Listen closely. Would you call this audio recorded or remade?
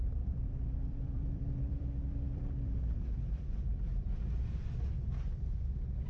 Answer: remade